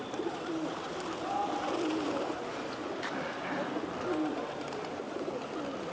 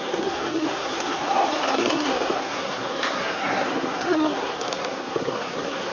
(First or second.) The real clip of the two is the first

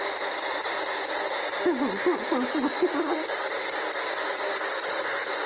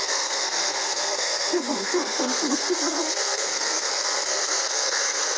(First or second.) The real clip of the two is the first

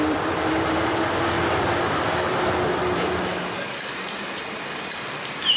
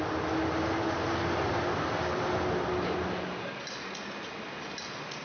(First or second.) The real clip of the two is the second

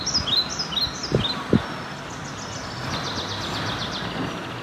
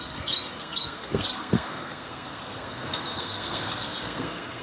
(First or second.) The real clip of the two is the first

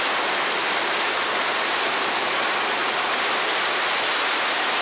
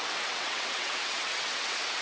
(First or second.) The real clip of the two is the first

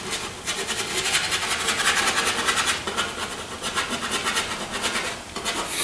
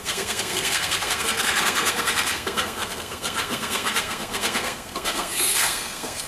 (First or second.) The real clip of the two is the first